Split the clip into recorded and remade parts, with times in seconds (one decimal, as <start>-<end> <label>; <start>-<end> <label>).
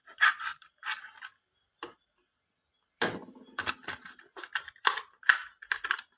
0.0-6.2 recorded